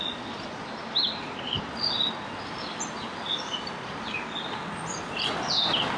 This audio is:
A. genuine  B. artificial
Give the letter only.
A